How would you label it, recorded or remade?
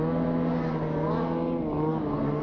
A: recorded